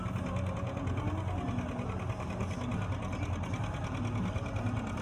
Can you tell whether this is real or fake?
real